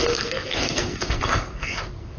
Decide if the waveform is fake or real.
fake